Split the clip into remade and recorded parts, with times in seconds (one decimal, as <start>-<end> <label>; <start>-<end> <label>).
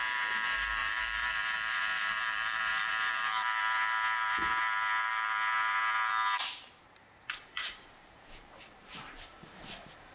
0.0-10.1 remade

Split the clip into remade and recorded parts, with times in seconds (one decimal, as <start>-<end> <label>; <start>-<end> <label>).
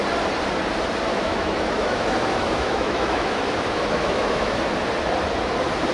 0.0-1.1 recorded; 1.1-4.6 remade; 4.6-5.9 recorded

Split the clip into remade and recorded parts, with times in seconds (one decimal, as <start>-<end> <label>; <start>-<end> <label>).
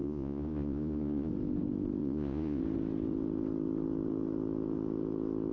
0.0-1.3 remade; 1.3-2.0 recorded; 2.0-2.6 remade; 2.6-5.5 recorded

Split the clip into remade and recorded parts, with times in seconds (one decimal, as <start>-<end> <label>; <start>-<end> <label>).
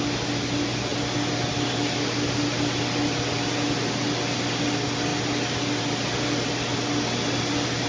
0.0-7.9 recorded